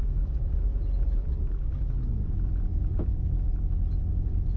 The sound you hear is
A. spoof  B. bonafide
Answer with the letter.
A